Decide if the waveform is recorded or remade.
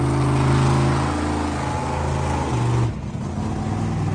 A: recorded